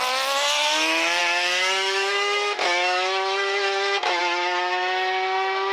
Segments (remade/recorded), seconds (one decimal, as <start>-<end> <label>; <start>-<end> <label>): 0.0-5.7 remade